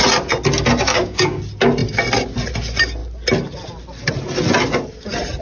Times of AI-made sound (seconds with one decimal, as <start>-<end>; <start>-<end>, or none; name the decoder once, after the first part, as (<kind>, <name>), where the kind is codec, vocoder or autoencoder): 0.9-1.4 (codec, DAC)